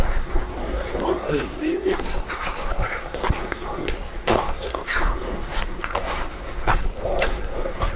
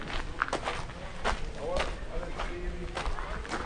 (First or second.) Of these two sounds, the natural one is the second